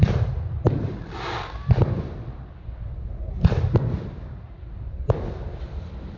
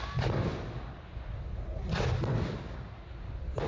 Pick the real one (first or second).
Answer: second